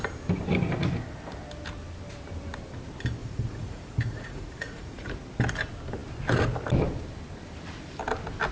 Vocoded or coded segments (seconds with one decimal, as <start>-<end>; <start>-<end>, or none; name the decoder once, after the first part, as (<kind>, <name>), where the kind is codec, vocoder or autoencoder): 3.2-5.1 (vocoder, Vocos)